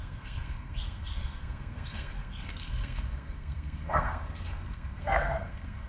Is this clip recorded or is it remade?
remade